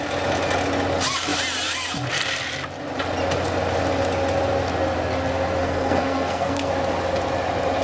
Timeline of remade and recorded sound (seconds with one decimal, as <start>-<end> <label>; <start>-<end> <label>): 0.0-5.6 recorded; 5.6-6.7 remade; 6.7-7.8 recorded